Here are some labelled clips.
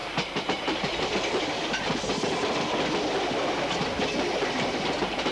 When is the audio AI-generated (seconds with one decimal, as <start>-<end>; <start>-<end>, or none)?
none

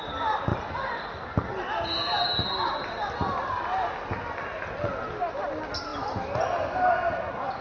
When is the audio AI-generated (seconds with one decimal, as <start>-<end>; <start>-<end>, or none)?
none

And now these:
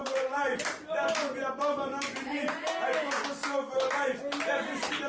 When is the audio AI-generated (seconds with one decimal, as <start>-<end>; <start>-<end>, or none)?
none